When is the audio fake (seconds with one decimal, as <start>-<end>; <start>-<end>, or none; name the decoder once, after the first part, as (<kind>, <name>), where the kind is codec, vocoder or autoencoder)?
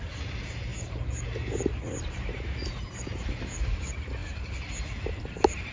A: none